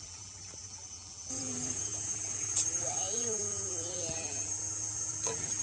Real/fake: fake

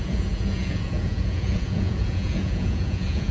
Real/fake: fake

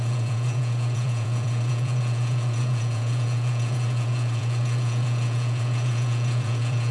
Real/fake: fake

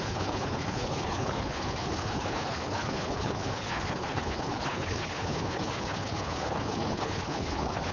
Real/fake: fake